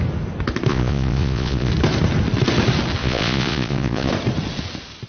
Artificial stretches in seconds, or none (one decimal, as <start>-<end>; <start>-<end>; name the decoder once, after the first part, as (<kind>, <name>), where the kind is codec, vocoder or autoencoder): 0.7-1.7 (vocoder, Vocos); 3.0-4.1